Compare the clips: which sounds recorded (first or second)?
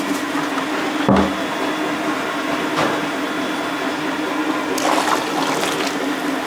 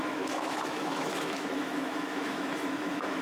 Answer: first